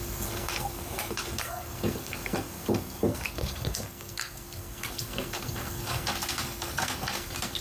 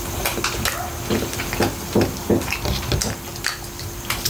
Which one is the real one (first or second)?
second